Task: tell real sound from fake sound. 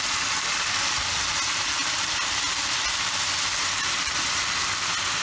real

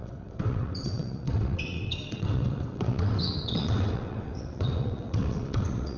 fake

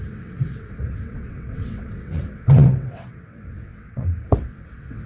fake